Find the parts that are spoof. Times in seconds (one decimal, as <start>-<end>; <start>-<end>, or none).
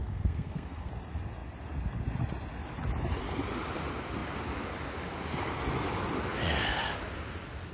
0.0-0.9